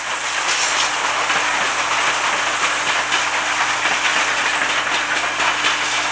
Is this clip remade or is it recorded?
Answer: recorded